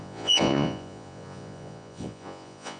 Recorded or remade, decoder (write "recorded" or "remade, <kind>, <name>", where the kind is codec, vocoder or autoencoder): remade, vocoder, Vocos